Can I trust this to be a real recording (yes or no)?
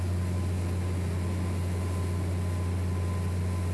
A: yes